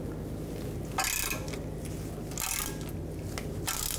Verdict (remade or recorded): recorded